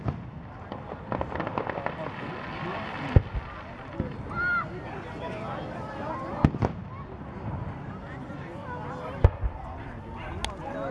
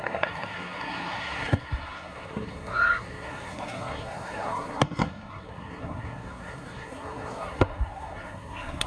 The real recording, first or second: first